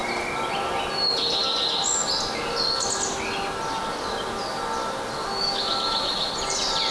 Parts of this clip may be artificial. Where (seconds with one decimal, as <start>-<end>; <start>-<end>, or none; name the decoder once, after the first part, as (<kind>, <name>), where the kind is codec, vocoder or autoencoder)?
5.2-6.3 (autoencoder, DAC-VAE)